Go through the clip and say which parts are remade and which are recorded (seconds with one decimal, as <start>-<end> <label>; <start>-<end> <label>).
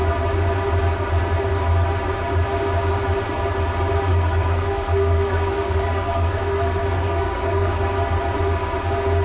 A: 0.0-4.1 recorded; 4.1-7.7 remade; 7.7-9.2 recorded